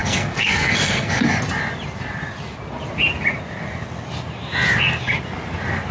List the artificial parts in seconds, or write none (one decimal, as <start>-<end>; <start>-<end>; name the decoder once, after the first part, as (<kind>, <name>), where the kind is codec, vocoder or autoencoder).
0.0-1.2 (codec, SNAC)